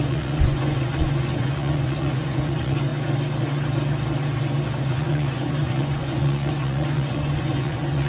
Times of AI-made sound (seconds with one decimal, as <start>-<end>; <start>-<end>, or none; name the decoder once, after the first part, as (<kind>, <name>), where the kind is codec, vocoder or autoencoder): 0.0-2.9 (vocoder, Vocos); 4.8-8.1